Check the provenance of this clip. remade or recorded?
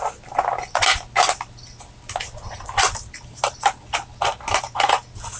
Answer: recorded